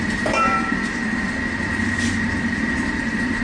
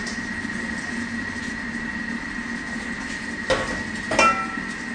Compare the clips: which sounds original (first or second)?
second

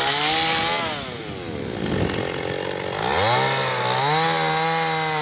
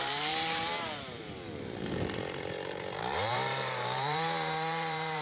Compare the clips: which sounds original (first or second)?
first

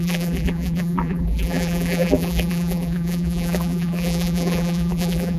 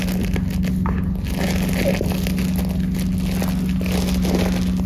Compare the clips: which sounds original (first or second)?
second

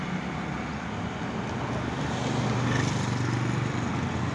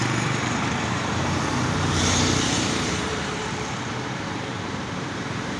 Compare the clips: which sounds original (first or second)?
first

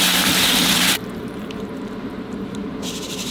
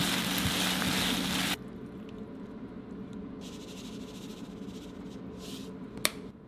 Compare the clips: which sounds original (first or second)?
second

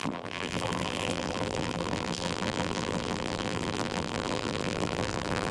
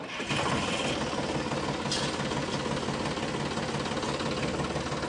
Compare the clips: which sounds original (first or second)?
second